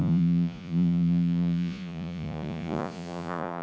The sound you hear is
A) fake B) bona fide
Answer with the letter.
A